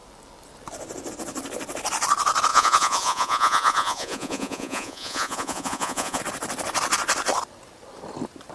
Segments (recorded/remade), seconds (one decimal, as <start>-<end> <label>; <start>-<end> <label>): 0.0-2.5 recorded; 2.5-6.2 remade; 6.2-8.5 recorded